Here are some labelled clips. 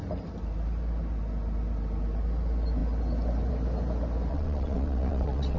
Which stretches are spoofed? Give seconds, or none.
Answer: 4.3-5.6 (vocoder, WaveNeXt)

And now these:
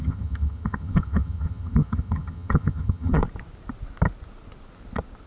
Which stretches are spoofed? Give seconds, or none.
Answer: 0.0-3.2 (vocoder, HiFi-GAN)

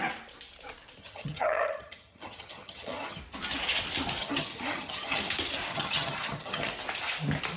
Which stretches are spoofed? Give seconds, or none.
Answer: 1.0-3.2 (vocoder, HiFi-GAN); 4.2-5.2; 5.7-6.7

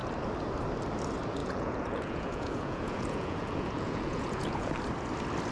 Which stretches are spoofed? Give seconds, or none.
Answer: 1.4-4.7 (vocoder, Vocos)

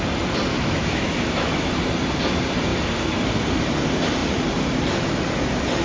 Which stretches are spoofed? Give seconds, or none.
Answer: 0.5-1.7 (autoencoder, DAC-VAE)